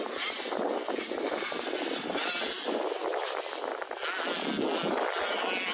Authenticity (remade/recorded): recorded